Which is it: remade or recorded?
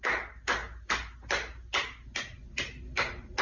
recorded